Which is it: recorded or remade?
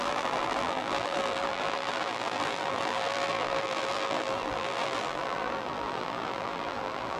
remade